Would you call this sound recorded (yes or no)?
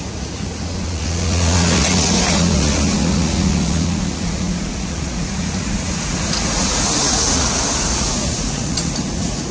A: no